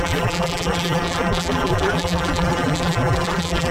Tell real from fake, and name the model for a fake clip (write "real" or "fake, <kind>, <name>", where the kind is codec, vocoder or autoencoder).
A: fake, vocoder, BigVGAN v2